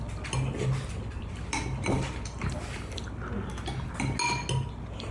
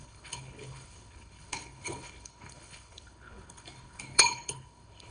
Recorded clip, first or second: first